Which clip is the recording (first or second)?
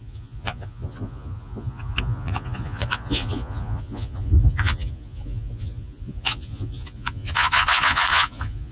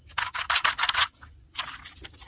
second